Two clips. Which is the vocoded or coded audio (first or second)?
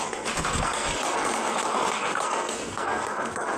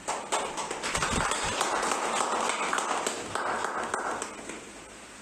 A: first